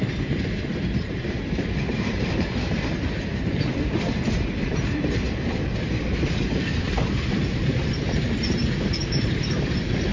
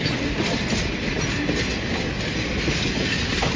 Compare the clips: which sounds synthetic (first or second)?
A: first